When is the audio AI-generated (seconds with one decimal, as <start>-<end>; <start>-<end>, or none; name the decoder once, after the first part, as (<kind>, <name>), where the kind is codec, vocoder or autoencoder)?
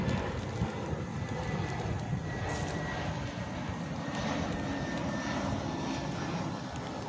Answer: 1.1-2.0 (vocoder, BigVGAN v2)